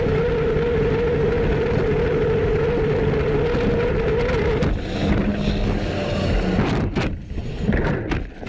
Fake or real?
real